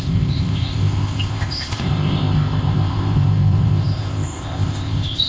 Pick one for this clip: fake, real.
fake